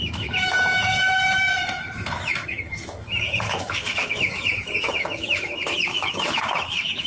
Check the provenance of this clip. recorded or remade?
remade